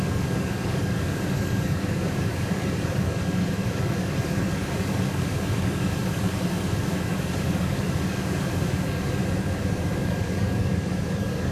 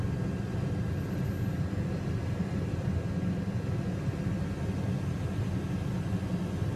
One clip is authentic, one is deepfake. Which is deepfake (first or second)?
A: first